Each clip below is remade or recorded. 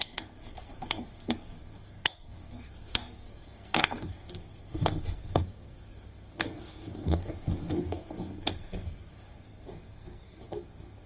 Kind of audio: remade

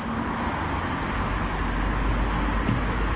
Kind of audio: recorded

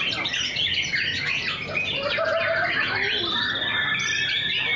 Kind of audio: recorded